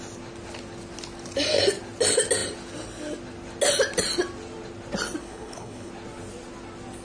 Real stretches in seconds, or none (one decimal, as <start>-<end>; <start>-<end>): 0.0-5.2; 5.9-7.0